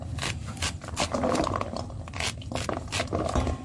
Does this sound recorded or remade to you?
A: recorded